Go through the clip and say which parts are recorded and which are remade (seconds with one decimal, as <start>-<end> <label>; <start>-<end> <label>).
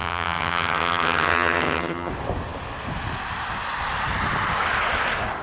0.0-2.1 remade; 2.1-5.4 recorded